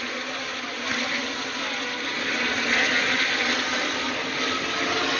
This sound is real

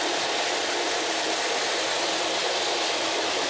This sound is real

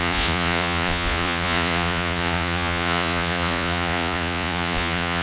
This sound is fake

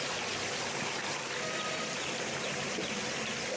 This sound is real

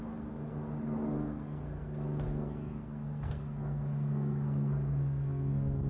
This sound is fake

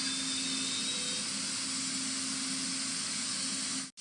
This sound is real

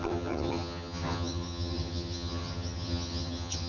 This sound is fake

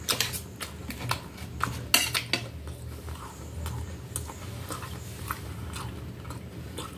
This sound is real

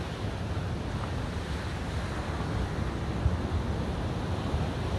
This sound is real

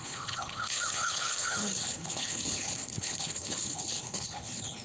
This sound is fake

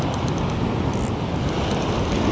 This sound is real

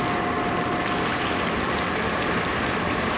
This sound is real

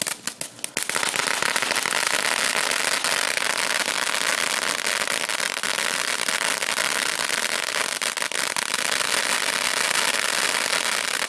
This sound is real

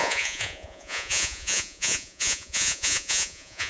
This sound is fake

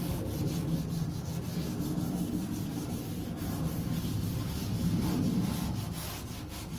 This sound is real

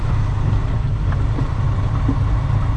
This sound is real